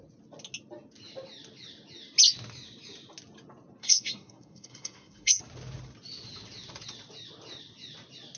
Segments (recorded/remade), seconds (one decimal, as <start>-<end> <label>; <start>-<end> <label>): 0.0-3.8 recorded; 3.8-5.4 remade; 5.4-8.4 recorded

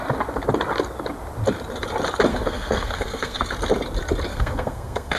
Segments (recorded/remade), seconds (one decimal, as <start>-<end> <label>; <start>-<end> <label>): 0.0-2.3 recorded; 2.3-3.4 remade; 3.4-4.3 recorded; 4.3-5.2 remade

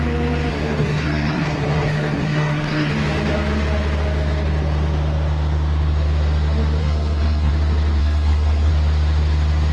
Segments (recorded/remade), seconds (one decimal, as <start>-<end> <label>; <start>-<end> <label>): 0.0-0.5 recorded; 0.5-2.9 remade; 2.9-6.8 recorded; 6.8-7.5 remade; 7.5-8.0 recorded; 8.0-8.7 remade; 8.7-9.7 recorded